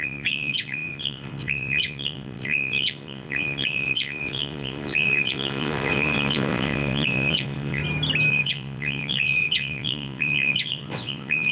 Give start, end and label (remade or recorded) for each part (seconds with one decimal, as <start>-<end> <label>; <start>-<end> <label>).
0.0-7.8 remade; 7.8-8.3 recorded; 8.3-11.5 remade